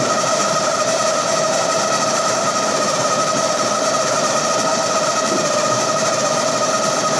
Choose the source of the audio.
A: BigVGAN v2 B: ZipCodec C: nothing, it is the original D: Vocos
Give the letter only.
A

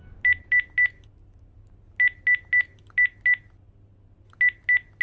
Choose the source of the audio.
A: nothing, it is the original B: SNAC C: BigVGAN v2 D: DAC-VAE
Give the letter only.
A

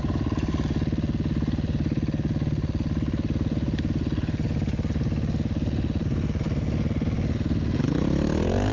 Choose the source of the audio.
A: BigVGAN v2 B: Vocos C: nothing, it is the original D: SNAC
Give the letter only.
C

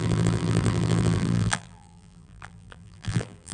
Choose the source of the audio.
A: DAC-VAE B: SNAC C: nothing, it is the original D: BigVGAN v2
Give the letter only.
D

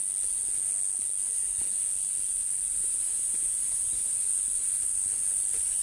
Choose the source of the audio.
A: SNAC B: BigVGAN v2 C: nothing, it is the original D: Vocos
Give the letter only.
C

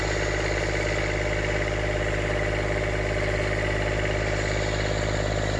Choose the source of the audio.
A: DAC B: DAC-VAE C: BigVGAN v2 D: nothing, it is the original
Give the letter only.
D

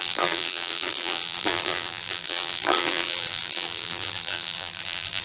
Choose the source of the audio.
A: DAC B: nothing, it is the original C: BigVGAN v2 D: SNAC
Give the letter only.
C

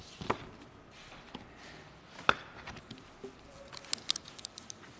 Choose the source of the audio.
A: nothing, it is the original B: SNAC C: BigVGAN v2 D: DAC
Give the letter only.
A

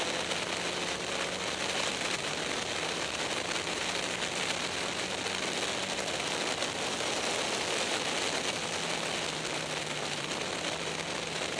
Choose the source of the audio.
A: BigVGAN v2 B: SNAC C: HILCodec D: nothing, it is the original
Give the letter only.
D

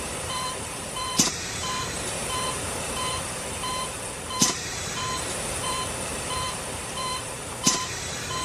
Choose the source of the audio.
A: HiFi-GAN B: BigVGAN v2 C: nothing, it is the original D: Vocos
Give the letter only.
B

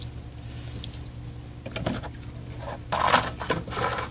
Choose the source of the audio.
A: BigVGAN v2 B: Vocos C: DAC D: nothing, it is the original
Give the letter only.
A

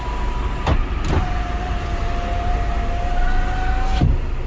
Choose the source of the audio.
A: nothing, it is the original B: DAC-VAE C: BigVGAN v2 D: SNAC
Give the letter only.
A